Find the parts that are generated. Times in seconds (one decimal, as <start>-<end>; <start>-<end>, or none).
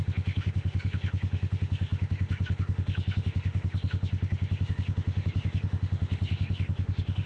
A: 0.0-7.3